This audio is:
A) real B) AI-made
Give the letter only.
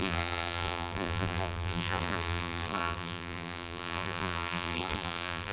B